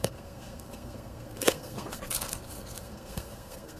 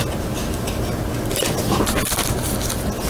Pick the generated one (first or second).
first